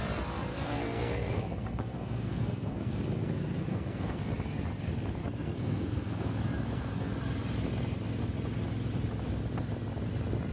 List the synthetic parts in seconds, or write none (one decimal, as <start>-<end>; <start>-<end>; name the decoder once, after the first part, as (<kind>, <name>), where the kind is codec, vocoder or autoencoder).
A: 0.5-4.2 (codec, SNAC); 5.2-7.1